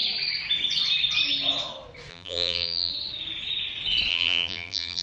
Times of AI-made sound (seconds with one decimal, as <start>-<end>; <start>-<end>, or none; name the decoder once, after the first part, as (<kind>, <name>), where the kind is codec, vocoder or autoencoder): 2.1-2.9 (vocoder, BigVGAN v2); 4.1-5.0